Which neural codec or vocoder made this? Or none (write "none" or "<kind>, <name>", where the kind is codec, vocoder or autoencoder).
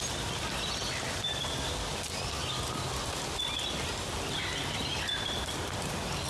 none